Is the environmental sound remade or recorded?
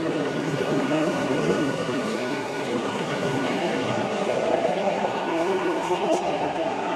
remade